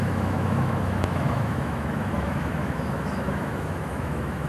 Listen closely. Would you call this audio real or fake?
fake